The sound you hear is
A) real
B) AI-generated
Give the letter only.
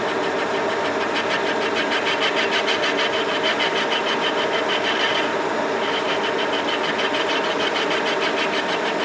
A